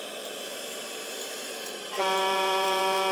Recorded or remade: remade